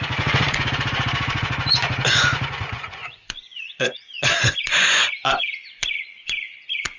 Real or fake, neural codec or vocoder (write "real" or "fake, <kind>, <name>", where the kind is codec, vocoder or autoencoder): fake, vocoder, Vocos